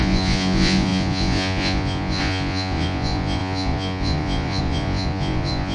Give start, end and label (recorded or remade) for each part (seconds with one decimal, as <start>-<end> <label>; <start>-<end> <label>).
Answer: 0.0-5.7 remade